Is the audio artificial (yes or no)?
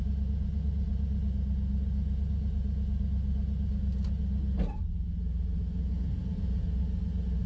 no